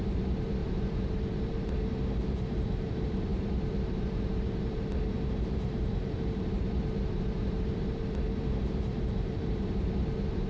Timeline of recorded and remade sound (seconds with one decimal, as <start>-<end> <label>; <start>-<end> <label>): 0.0-10.5 remade